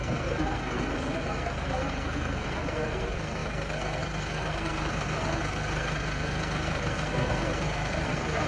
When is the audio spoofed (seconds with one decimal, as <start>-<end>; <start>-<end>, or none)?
0.0-8.5